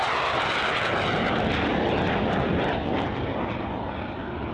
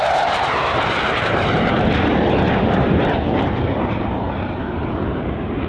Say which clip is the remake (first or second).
second